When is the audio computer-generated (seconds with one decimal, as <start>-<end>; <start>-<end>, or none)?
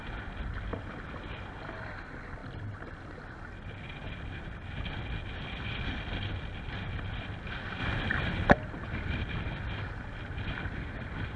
none